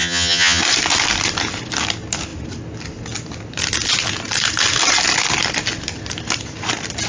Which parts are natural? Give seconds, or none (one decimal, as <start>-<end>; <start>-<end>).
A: 0.6-7.1